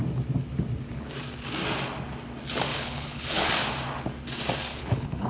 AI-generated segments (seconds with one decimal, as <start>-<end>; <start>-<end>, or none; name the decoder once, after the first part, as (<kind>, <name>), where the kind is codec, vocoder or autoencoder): 2.7-3.5 (codec, HILCodec); 4.7-5.3